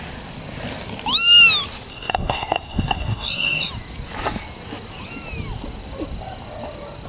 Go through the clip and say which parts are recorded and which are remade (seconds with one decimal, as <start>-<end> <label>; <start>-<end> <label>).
0.0-1.9 recorded; 1.9-3.7 remade; 3.7-7.1 recorded